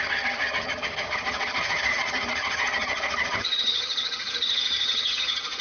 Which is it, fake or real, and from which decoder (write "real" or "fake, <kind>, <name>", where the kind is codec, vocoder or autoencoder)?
fake, vocoder, HiFi-GAN